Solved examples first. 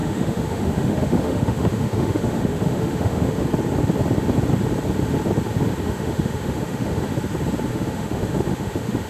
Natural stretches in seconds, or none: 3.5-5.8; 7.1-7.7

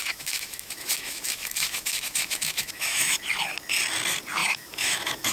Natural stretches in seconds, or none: 3.2-4.4

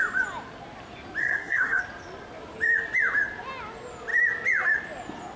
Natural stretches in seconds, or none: 0.0-1.2; 1.8-5.4